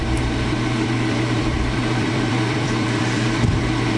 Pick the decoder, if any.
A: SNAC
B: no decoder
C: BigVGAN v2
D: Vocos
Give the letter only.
C